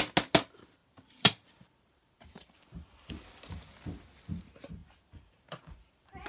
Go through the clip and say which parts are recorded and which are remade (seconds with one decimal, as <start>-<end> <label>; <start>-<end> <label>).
0.0-0.8 recorded; 0.8-3.1 remade; 3.1-4.8 recorded; 4.8-6.3 remade